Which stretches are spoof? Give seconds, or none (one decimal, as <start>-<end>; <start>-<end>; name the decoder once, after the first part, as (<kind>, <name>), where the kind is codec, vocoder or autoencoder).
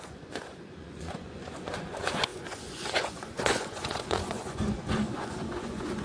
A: 0.0-6.0 (vocoder, Vocos)